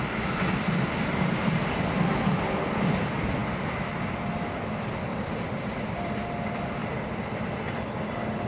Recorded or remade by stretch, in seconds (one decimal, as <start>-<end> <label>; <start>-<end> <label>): 0.0-5.1 recorded; 5.1-6.2 remade; 6.2-8.5 recorded